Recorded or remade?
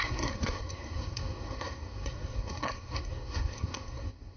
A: remade